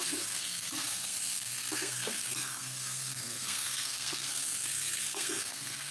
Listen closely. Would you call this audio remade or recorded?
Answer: remade